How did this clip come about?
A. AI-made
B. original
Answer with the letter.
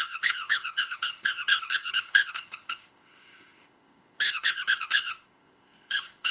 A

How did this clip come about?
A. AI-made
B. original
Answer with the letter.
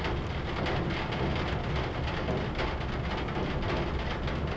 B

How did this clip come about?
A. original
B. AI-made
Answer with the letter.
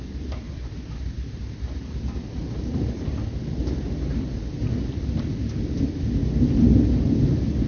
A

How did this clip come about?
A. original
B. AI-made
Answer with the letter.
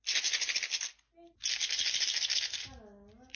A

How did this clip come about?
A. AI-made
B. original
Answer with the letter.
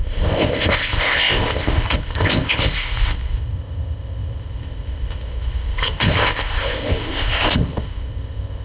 A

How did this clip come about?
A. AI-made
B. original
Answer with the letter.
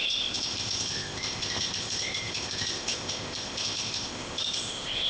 A